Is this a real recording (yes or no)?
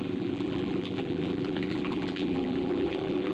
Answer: no